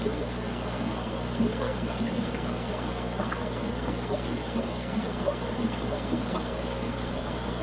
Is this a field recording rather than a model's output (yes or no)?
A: no